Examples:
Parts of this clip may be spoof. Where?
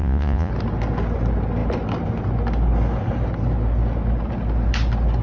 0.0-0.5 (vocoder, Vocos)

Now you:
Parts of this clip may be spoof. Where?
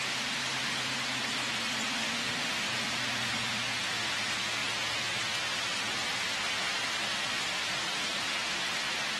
2.0-2.7 (autoencoder, DAC-VAE)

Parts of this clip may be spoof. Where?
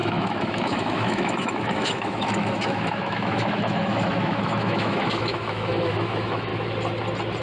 0.0-6.5 (autoencoder, DAC-VAE)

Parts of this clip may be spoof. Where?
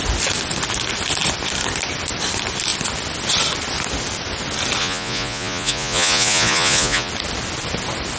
4.8-7.1 (vocoder, Vocos)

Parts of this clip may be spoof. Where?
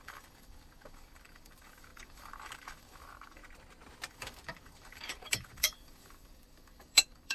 0.0-3.4 (codec, DAC); 4.1-7.3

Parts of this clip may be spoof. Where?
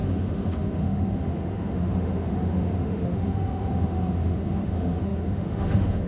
0.0-6.1 (autoencoder, DAC-VAE)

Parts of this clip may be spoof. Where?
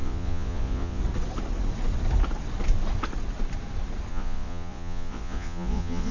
0.0-1.0 (vocoder, Vocos); 4.1-6.1